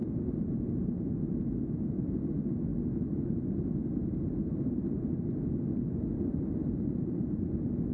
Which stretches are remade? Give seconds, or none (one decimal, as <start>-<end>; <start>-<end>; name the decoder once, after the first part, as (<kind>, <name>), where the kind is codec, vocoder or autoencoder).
0.0-1.0 (vocoder, BigVGAN v2); 6.6-7.4